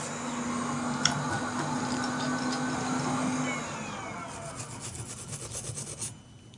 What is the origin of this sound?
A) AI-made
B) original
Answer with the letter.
B